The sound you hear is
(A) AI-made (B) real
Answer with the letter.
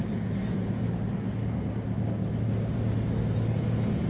B